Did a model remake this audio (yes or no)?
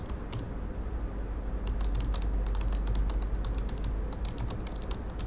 no